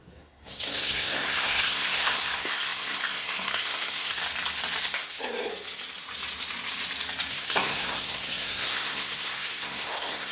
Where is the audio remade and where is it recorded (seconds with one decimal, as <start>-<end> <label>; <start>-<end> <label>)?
0.0-4.2 remade; 4.2-4.8 recorded; 4.8-5.5 remade; 5.5-7.3 recorded; 7.3-10.3 remade